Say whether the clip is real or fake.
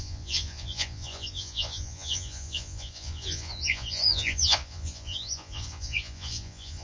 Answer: fake